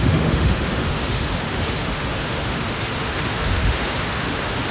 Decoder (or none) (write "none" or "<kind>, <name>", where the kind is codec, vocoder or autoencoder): autoencoder, DAC-VAE